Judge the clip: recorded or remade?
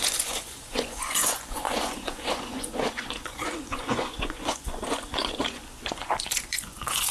remade